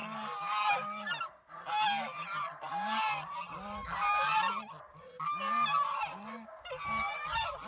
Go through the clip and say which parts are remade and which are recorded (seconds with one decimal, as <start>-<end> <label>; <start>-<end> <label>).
0.0-7.7 recorded